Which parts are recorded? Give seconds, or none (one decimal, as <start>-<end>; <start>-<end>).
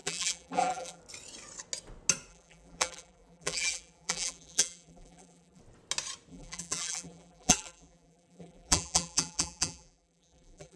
1.0-2.3; 5.6-6.3